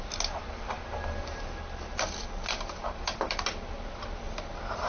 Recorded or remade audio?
recorded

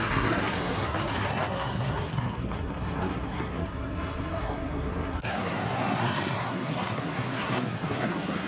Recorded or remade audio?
remade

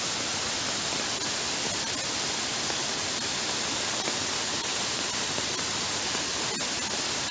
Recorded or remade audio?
recorded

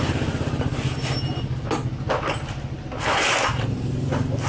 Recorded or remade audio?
recorded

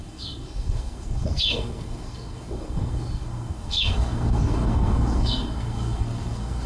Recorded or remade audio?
remade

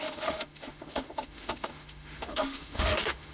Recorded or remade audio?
remade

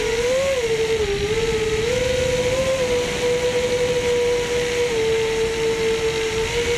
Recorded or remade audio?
recorded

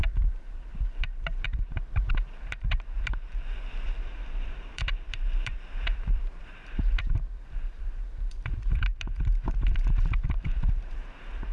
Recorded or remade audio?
remade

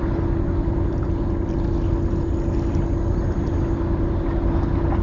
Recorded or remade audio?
recorded